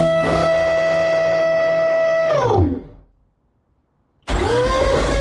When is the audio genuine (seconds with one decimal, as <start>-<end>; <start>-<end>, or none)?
0.4-1.4; 3.2-4.4